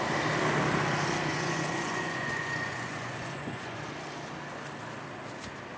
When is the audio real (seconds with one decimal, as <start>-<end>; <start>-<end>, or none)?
0.0-1.3; 3.8-5.8

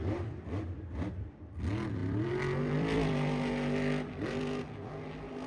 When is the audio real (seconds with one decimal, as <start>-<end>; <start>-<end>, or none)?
0.0-2.0; 4.6-5.5

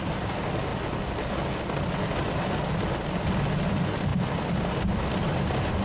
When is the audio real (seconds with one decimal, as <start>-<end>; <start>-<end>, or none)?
0.0-5.8

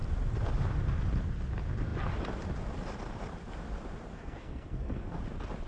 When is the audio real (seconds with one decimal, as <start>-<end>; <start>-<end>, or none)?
0.0-4.1; 5.2-5.7

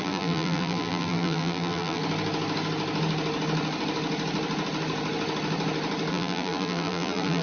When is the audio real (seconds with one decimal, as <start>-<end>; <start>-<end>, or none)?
2.0-6.1

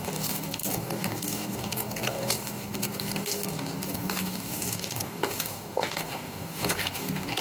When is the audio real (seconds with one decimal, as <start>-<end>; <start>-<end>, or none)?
none

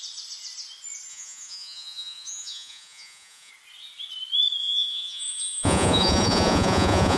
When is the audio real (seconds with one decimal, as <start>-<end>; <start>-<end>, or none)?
0.0-1.1; 3.5-4.6